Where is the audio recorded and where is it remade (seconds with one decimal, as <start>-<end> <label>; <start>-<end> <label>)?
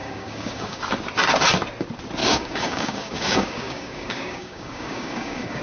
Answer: 0.0-0.8 remade; 0.8-2.2 recorded; 2.2-5.6 remade